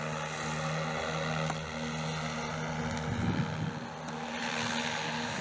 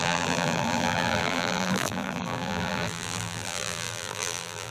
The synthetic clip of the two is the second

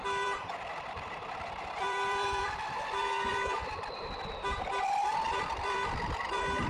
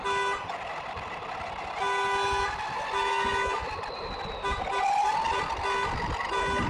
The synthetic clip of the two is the first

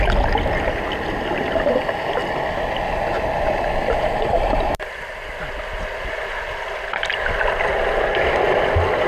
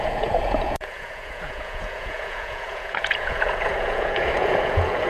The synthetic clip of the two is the second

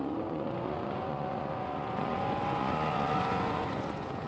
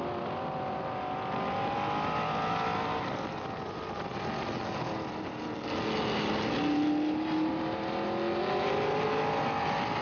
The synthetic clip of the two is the first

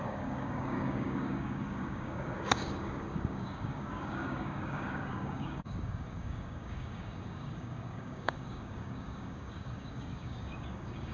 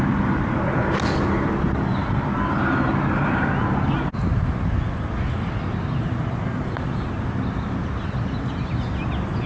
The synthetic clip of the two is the first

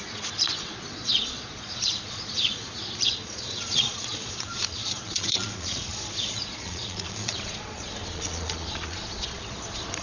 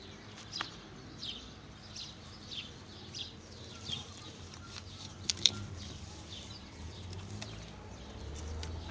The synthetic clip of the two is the first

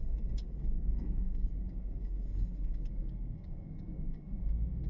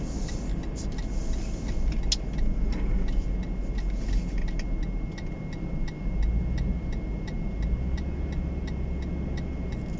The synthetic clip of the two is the first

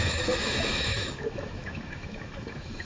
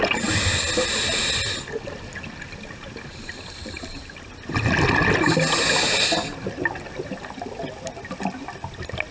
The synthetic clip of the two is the first